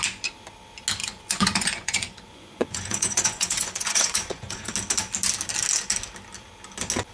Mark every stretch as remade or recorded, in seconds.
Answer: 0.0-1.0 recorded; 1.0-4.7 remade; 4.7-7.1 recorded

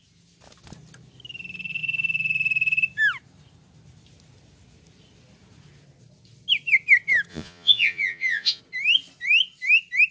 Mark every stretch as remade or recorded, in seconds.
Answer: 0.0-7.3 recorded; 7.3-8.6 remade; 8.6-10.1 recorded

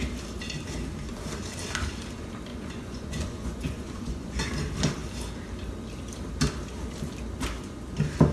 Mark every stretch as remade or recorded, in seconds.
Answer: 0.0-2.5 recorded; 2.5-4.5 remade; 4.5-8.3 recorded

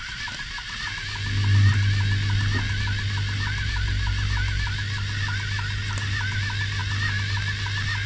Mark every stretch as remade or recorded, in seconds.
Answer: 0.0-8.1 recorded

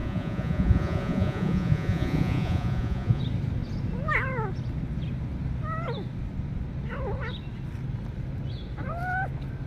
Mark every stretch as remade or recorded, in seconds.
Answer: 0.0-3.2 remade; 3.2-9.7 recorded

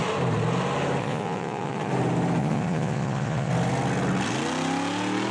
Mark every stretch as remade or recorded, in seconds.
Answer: 0.0-1.0 recorded; 1.0-1.9 remade; 1.9-2.4 recorded; 2.4-3.5 remade; 3.5-5.3 recorded

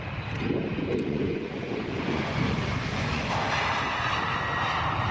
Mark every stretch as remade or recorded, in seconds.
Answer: 0.0-0.8 recorded; 0.8-3.3 remade; 3.3-5.1 recorded

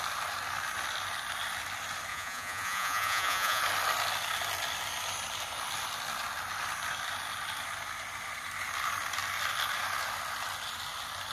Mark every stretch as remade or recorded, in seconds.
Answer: 0.0-2.1 recorded; 2.1-3.6 remade; 3.6-11.3 recorded